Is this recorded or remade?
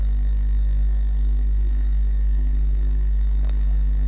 remade